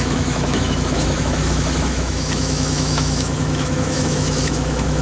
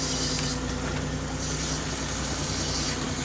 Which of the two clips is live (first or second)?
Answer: second